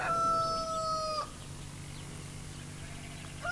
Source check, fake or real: real